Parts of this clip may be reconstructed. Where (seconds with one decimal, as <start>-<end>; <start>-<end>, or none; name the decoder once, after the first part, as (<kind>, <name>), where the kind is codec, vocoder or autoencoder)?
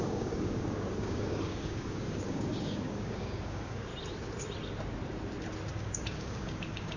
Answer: 0.0-3.9 (codec, DAC); 5.7-7.0